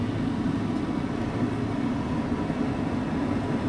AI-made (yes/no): no